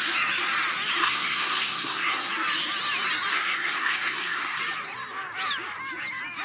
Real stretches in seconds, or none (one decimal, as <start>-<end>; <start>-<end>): 0.0-1.0; 2.3-3.3; 4.6-6.4